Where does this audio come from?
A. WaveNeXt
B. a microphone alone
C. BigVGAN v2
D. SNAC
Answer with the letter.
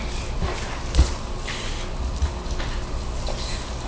B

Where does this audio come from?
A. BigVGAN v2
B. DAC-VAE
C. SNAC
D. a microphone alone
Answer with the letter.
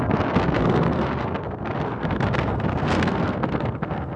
C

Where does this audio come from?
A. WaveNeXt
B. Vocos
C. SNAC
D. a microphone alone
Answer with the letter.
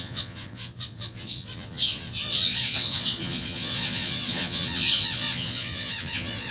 B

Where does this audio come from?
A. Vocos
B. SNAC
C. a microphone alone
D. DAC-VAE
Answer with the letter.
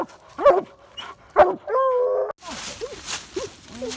C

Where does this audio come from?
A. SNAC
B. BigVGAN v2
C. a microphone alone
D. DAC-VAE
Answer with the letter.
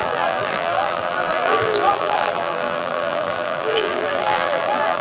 B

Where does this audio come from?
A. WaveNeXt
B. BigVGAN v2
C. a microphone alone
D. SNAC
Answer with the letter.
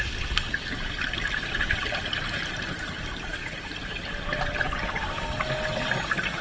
C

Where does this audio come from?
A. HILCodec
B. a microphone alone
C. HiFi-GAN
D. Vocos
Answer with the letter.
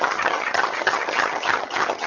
C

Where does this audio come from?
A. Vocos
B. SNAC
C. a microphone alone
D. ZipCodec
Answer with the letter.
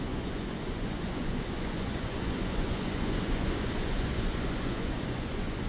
A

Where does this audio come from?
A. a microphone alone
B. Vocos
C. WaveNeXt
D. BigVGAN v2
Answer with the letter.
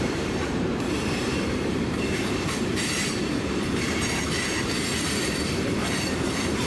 D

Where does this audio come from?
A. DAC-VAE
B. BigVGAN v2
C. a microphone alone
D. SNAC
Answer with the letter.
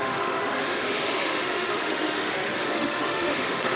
A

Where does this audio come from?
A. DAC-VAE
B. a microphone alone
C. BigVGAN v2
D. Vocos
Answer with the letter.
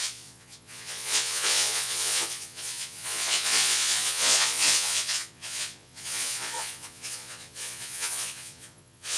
D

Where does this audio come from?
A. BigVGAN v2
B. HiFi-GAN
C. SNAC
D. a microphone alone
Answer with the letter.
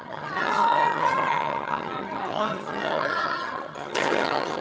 B